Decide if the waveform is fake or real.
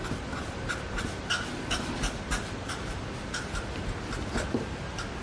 real